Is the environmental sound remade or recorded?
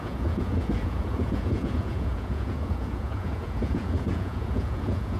remade